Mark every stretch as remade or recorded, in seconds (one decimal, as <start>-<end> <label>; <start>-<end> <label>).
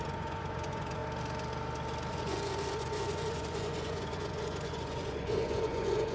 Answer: 0.0-1.0 remade; 1.0-2.1 recorded; 2.1-6.1 remade